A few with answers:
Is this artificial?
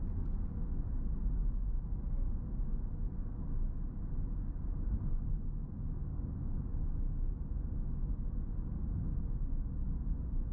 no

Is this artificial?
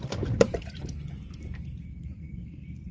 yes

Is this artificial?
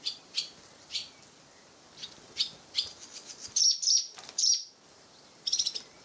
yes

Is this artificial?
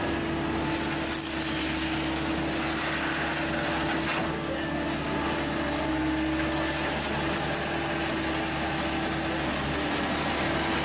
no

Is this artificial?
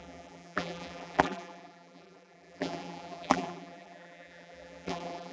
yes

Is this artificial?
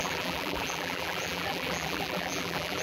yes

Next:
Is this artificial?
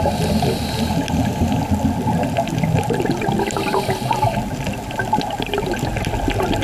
no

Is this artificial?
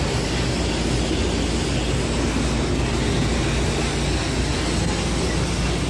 no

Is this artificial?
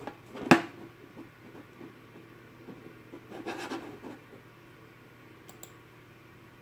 no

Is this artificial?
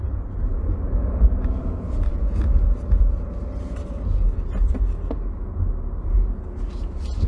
no